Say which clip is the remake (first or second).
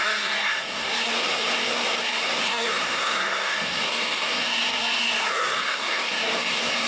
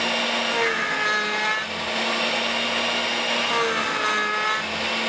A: first